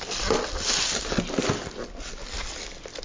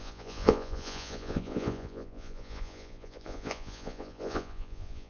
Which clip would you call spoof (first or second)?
second